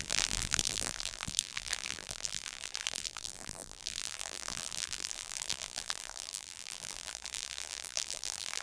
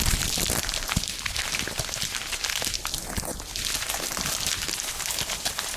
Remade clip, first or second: first